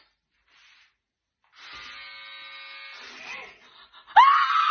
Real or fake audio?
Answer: real